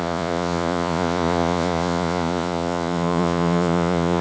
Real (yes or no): no